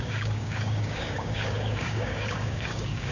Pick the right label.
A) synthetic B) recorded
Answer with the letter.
A